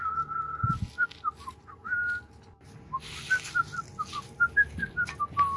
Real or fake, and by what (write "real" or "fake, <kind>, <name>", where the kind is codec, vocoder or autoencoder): real